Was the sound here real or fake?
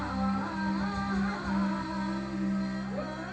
real